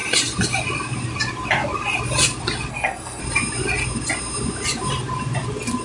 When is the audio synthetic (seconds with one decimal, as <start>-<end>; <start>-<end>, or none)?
2.7-3.2